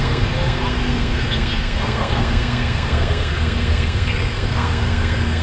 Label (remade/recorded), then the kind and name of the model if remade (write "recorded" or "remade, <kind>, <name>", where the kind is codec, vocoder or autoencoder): remade, codec, SNAC